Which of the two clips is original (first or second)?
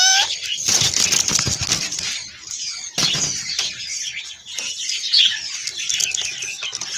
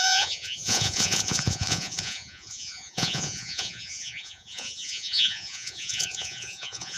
first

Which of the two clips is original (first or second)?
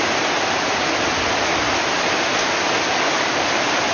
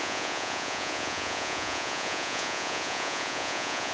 first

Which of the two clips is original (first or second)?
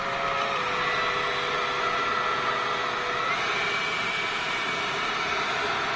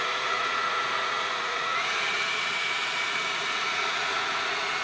first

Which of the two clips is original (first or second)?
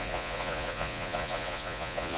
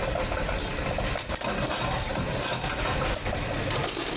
second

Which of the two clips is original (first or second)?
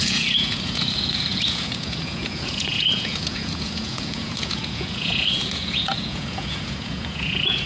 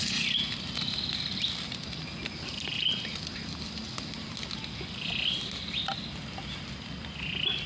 second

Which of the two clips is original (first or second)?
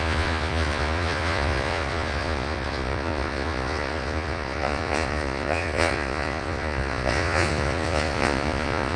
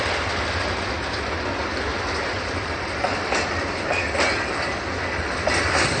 second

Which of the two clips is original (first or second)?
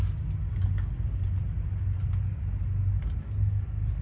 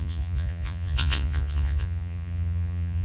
first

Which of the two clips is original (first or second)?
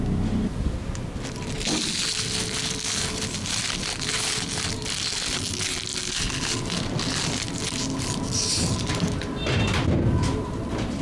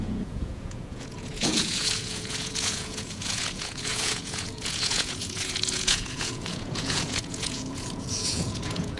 first